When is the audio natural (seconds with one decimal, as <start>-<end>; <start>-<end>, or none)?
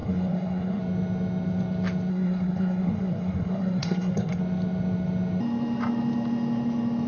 0.8-2.1; 4.4-7.1